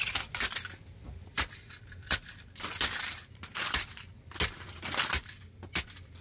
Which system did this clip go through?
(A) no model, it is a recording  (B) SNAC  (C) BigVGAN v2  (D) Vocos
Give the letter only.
A